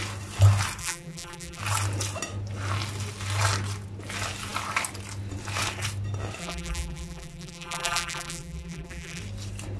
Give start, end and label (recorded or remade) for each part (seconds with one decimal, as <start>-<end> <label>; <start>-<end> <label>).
0.0-0.8 recorded; 0.8-1.6 remade; 1.6-6.4 recorded; 6.4-9.2 remade; 9.2-9.8 recorded